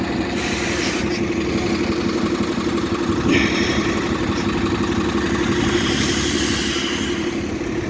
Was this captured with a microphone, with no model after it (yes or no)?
yes